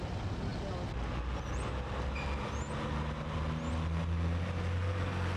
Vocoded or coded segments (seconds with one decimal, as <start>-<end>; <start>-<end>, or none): none